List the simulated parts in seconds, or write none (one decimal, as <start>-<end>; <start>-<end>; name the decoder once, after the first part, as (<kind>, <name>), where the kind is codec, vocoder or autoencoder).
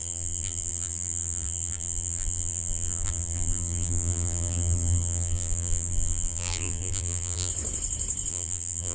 0.0-7.5 (vocoder, BigVGAN v2); 8.3-8.9